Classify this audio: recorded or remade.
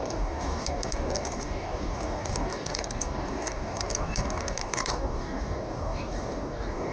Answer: remade